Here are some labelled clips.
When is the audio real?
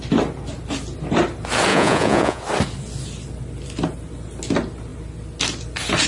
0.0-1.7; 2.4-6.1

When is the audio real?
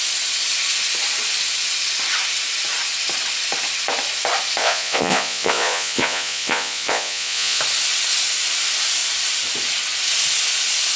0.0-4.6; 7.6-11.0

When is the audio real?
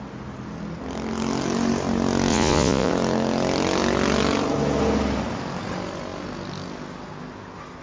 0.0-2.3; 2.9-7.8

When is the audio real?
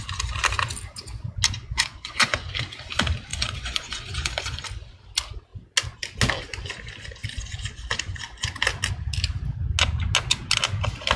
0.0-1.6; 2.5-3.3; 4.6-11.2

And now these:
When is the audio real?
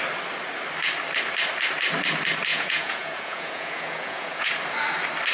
0.0-2.5; 4.5-5.3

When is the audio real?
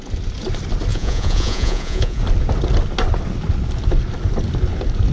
0.0-0.9; 2.2-5.1